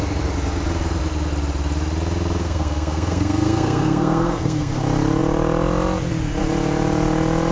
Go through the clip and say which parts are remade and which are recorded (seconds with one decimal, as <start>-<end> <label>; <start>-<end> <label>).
0.0-2.4 recorded; 2.4-4.8 remade; 4.8-7.5 recorded